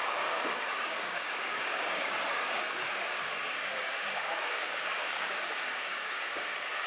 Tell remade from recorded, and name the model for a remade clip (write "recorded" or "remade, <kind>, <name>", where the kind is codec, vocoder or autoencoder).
remade, codec, DAC